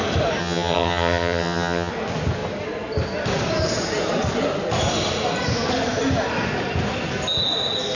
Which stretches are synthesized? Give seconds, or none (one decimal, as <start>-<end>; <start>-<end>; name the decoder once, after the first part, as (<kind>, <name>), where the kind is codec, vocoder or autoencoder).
0.4-1.9 (vocoder, HiFi-GAN)